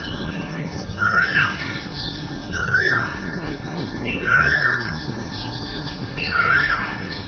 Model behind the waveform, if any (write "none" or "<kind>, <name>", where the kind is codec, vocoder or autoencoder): codec, SNAC